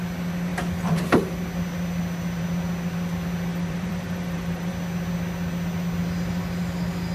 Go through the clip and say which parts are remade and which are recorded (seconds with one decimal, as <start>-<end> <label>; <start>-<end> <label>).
0.0-3.5 recorded; 3.5-4.7 remade; 4.7-7.1 recorded